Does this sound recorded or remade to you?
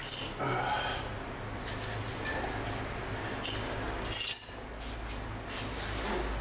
recorded